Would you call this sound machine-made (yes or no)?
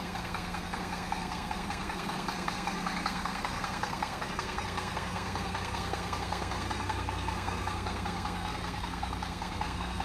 yes